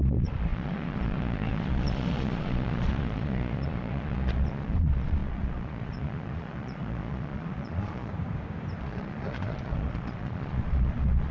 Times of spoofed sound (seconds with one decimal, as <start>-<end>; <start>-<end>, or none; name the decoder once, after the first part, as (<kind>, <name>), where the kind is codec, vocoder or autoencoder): 0.0-8.1 (vocoder, Vocos); 8.8-11.3